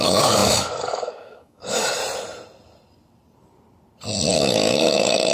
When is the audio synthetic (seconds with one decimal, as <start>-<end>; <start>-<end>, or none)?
0.0-2.0; 4.3-5.3